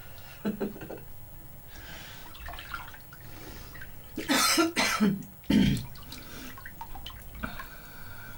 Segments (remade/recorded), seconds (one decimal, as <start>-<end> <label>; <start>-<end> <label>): 0.0-8.4 recorded